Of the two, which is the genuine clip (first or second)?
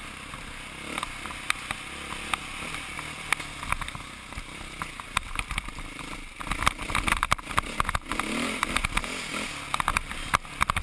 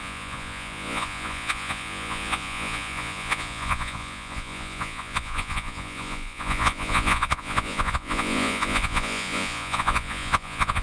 first